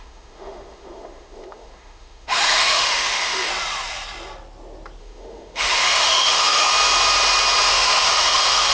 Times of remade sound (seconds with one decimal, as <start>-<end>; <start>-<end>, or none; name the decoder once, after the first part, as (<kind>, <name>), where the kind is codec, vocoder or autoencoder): 0.0-3.5 (autoencoder, DAC-VAE); 5.0-6.7; 7.7-8.7